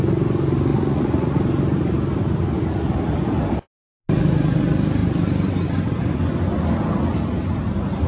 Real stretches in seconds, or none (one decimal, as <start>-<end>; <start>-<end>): 0.0-0.7; 1.4-8.1